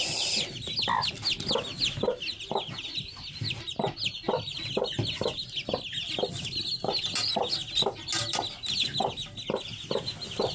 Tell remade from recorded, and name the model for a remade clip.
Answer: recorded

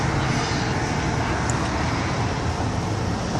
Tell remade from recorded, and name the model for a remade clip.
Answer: recorded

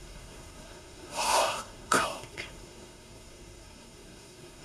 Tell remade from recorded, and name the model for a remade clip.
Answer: remade, codec, SNAC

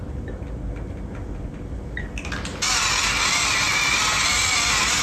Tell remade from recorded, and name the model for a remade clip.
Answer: recorded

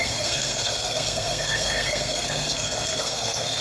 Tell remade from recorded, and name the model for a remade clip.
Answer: remade, codec, SNAC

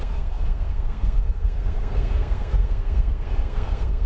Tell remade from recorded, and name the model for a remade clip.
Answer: remade, codec, SNAC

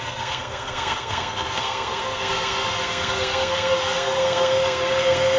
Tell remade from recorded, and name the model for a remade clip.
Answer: remade, codec, SNAC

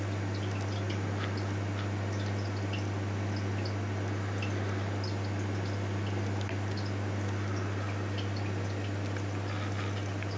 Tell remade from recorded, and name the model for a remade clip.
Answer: recorded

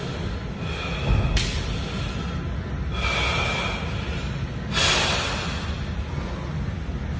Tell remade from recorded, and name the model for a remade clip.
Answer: recorded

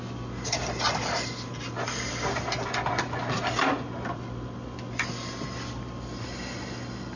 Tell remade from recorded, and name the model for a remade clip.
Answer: recorded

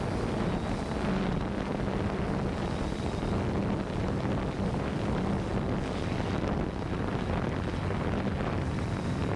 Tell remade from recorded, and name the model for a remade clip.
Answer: recorded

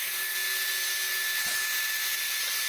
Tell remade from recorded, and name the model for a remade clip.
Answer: recorded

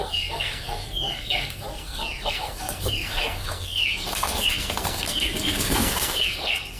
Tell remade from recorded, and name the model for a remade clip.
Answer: remade, codec, SNAC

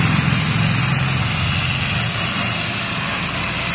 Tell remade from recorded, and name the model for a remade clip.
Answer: recorded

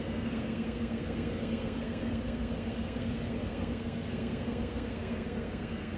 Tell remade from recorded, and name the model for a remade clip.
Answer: remade, codec, SNAC